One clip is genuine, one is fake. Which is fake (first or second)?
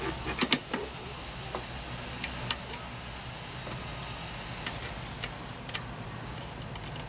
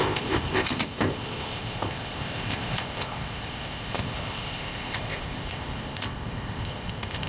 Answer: second